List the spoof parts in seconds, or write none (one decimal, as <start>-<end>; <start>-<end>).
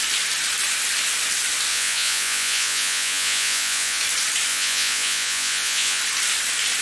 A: 1.7-4.0; 4.5-6.0